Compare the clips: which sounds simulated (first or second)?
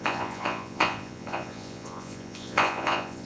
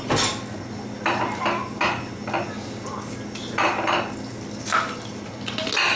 first